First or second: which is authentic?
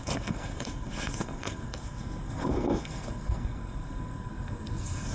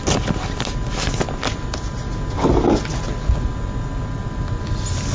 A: second